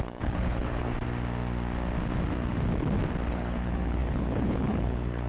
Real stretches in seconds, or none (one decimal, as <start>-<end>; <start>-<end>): 0.9-3.3